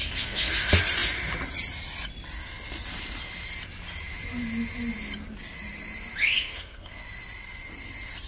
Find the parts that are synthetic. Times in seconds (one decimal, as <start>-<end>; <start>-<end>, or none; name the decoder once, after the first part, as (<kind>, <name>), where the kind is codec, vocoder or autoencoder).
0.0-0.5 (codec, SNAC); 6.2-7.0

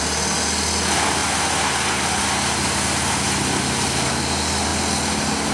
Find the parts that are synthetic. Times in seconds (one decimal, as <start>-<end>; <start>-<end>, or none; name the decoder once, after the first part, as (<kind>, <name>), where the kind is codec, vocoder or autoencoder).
none

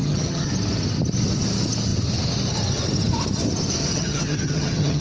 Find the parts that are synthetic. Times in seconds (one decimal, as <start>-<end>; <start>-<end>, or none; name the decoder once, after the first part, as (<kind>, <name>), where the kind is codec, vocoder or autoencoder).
0.0-0.5 (vocoder, HiFi-GAN); 3.8-5.0

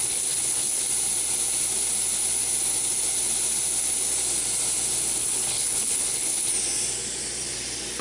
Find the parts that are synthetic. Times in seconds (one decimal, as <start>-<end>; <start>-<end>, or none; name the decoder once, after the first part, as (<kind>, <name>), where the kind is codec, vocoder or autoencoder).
0.0-0.9 (codec, HILCodec); 5.2-6.5